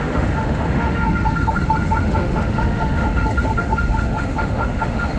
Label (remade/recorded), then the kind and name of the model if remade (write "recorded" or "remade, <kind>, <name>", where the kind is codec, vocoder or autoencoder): remade, autoencoder, DAC-VAE